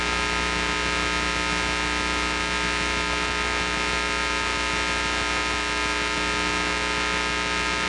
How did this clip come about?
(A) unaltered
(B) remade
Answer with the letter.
A